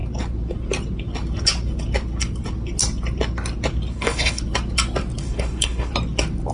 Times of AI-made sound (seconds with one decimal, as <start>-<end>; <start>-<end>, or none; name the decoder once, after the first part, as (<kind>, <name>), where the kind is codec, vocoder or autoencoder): 3.9-4.4 (codec, HILCodec); 5.2-5.9